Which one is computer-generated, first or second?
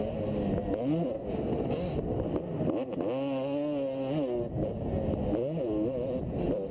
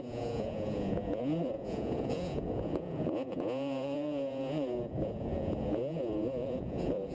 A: second